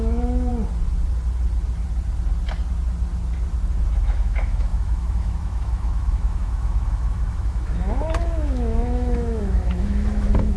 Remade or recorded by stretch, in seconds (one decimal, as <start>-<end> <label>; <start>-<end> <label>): 0.0-0.5 remade; 0.5-3.9 recorded; 3.9-10.6 remade